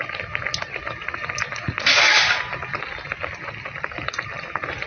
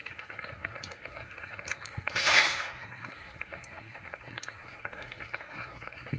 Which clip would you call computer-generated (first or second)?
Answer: second